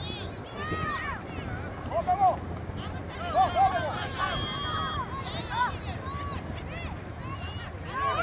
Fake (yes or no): no